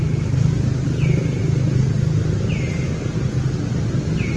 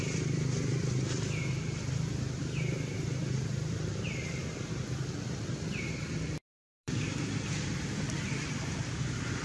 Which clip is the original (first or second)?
first